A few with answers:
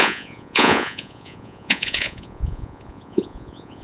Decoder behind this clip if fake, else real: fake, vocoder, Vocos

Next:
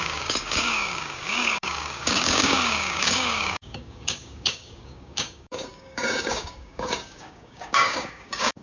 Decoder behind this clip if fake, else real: fake, codec, DAC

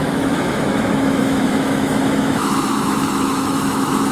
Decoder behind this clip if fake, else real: fake, autoencoder, DAC-VAE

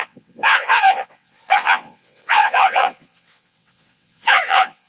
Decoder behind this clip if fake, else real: fake, vocoder, WaveNeXt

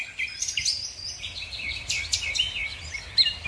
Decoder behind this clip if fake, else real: real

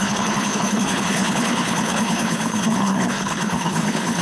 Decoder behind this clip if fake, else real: fake, codec, HILCodec